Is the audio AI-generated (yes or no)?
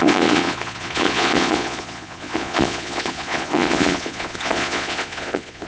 yes